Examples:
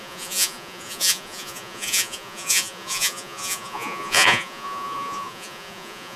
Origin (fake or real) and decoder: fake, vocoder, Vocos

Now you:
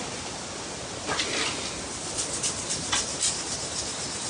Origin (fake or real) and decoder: real